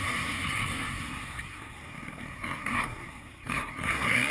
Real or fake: fake